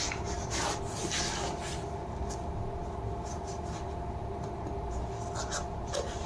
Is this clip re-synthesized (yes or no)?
no